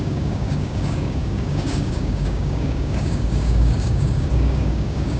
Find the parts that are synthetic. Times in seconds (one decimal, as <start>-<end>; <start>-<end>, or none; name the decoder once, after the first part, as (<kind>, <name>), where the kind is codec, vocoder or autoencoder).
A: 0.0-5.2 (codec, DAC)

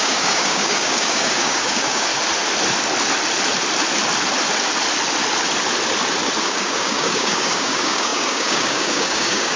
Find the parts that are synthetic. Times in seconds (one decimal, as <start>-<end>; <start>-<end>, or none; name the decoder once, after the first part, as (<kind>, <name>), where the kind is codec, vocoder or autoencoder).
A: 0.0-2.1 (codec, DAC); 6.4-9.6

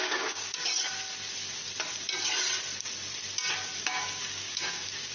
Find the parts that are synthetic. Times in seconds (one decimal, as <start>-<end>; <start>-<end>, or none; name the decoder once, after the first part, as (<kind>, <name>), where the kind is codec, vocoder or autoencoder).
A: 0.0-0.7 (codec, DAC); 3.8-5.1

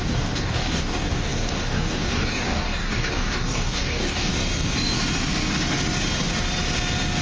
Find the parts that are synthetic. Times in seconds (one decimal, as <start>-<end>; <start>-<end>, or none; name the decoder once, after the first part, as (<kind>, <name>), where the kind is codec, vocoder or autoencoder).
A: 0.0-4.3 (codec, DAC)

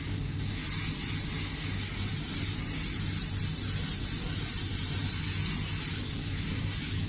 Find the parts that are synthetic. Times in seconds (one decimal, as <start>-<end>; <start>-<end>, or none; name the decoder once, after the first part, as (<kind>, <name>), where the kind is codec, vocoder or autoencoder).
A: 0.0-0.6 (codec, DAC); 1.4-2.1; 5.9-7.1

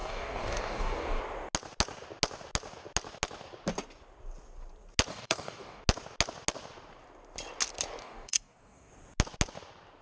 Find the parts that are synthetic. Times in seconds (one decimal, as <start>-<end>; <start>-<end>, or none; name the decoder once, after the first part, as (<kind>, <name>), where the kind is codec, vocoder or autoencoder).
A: 0.0-1.2 (codec, DAC); 5.1-5.8; 8.0-8.9

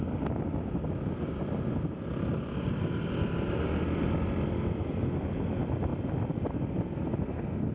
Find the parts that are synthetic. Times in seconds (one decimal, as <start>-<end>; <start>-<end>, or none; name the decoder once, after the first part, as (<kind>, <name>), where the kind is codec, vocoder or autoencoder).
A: none

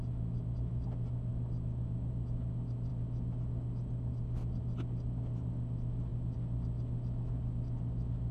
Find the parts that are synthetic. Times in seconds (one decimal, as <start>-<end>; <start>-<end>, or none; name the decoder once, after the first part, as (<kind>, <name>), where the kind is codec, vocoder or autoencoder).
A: none